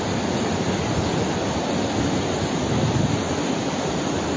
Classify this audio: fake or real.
real